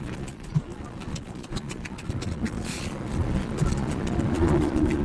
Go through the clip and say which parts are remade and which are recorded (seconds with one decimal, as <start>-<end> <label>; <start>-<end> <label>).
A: 0.0-5.0 remade